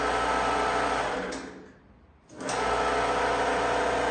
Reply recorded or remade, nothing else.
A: recorded